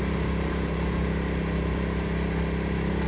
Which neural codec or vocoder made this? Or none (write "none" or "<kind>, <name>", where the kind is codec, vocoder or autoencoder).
none